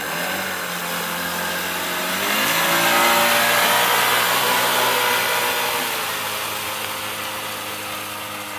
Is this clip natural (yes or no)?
yes